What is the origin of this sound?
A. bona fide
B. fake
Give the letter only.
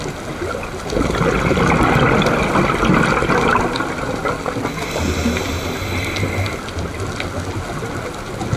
A